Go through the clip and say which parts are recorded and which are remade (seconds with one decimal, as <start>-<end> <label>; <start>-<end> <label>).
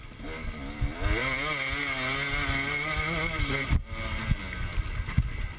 0.0-5.6 recorded